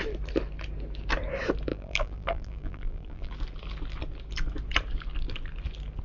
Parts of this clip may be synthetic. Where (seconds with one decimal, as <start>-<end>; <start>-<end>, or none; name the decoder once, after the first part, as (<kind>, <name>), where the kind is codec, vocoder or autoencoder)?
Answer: 1.7-3.3 (vocoder, BigVGAN v2)